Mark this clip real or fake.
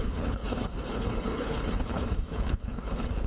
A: fake